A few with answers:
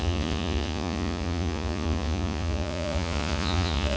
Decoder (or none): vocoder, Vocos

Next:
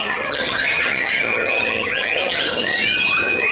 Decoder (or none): vocoder, HiFi-GAN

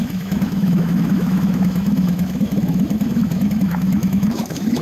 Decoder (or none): autoencoder, DAC-VAE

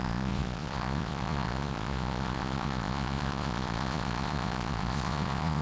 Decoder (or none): vocoder, Vocos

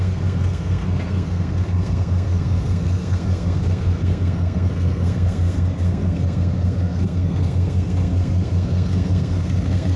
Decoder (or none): codec, SNAC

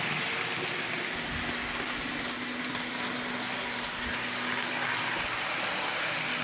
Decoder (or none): none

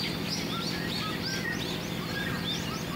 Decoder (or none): none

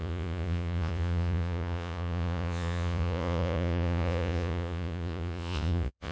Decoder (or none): vocoder, Vocos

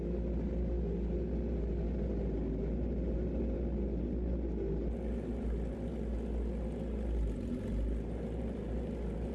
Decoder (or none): none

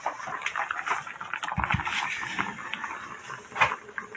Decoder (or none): none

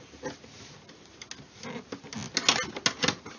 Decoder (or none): none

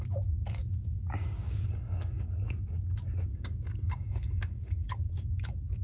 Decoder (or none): codec, DAC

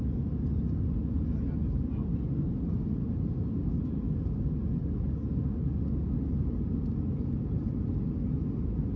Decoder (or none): none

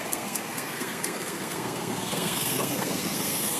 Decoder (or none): codec, SNAC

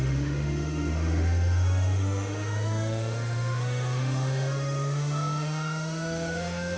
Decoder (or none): autoencoder, DAC-VAE